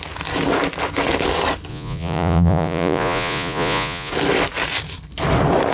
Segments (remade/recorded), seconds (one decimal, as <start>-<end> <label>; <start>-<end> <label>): 0.0-1.7 recorded; 1.7-4.1 remade; 4.1-5.7 recorded